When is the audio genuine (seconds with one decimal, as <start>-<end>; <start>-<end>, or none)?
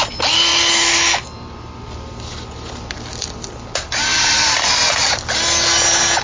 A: 0.0-4.1; 4.9-6.2